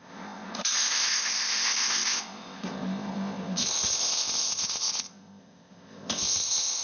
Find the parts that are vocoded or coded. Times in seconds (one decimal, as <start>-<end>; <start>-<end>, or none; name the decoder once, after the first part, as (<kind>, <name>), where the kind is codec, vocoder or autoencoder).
0.0-6.8 (codec, ZipCodec)